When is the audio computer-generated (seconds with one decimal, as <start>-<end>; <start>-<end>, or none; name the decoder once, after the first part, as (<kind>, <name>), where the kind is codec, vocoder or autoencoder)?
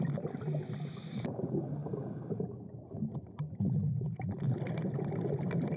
none